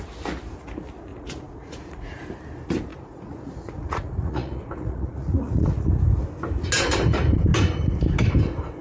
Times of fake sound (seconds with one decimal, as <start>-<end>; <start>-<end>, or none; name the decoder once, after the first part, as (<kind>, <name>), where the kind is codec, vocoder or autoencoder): 1.1-2.2 (vocoder, Vocos); 2.9-6.0